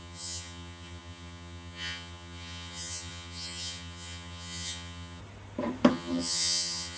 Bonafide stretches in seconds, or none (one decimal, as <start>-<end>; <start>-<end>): 5.2-5.9